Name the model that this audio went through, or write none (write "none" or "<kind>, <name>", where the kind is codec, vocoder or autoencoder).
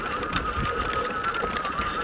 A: none